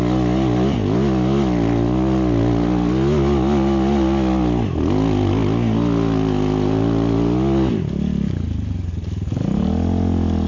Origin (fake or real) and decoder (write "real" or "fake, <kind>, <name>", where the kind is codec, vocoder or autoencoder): real